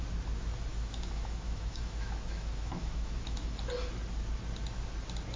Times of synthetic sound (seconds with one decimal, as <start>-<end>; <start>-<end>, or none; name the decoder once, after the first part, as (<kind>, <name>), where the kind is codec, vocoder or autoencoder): 0.7-3.7 (autoencoder, DAC-VAE)